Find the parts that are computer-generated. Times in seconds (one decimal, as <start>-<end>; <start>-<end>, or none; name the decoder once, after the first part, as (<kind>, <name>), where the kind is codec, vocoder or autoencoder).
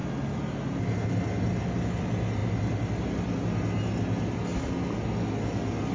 none